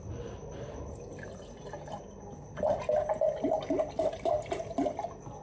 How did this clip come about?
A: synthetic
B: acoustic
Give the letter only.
B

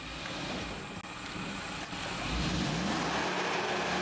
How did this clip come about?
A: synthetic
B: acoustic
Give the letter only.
B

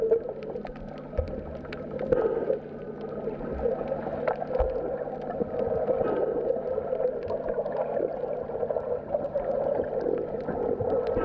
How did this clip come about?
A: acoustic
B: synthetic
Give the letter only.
A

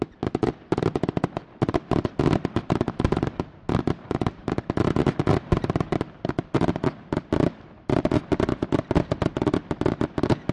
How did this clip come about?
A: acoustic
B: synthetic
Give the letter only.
A